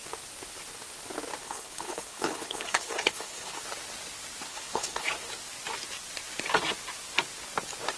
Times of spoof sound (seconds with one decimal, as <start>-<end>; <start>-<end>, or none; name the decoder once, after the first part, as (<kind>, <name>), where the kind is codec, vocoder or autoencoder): 1.4-3.6 (codec, HILCodec); 4.5-5.1